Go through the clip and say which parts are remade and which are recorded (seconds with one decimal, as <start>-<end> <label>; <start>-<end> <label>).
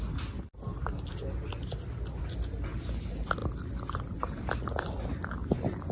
0.0-5.9 recorded